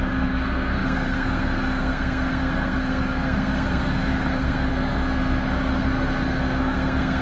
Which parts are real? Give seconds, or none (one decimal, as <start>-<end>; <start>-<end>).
none